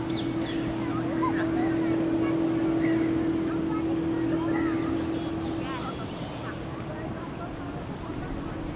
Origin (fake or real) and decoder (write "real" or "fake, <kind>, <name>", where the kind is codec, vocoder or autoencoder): real